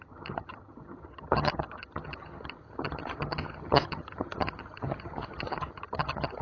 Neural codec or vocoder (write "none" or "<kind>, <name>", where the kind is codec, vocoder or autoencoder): vocoder, HiFi-GAN